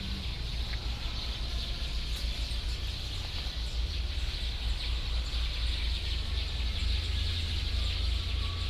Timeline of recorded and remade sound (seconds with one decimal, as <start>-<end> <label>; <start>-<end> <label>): 0.0-8.7 recorded